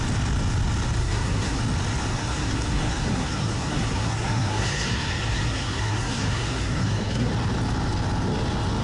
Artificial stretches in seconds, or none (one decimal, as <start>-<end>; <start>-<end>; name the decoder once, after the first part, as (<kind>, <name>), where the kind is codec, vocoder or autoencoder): 1.0-1.6 (codec, SNAC); 2.1-7.3